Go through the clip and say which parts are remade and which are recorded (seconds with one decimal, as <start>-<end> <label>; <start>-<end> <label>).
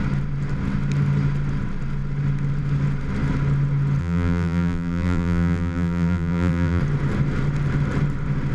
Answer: 0.0-4.0 recorded; 4.0-6.8 remade; 6.8-8.5 recorded